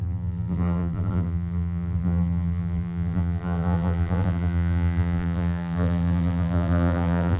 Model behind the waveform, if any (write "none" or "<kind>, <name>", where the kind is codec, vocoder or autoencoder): vocoder, BigVGAN v2